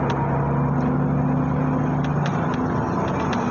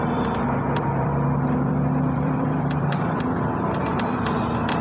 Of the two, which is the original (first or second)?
first